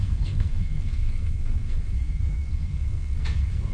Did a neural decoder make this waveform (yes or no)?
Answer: yes